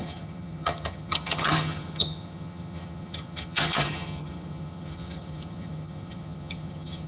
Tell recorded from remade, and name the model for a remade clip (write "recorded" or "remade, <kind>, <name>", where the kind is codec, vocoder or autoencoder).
remade, vocoder, HiFi-GAN